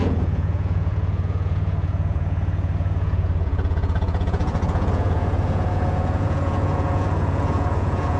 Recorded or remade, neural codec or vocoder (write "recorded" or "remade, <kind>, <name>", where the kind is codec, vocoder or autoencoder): remade, vocoder, Vocos